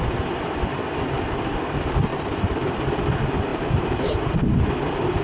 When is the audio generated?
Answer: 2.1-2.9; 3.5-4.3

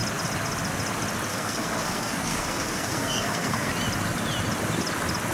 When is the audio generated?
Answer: 1.3-3.7

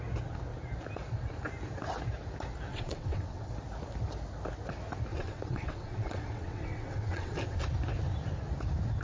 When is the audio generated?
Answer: 2.7-3.5; 5.1-7.6

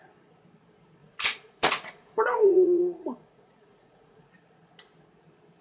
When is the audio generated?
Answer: 1.0-4.3

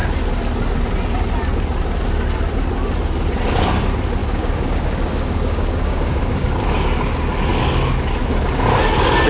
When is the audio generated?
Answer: 4.2-6.6

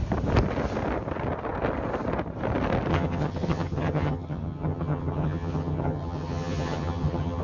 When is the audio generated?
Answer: 2.9-7.4

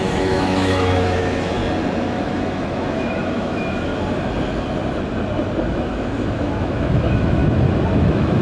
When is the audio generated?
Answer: 0.0-1.6; 2.1-3.9; 5.7-7.4; 8.0-8.4

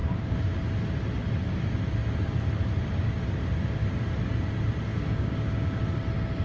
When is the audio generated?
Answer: 0.0-0.6; 4.9-5.8